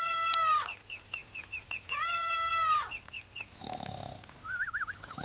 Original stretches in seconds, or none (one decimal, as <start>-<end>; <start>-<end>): 0.0-5.2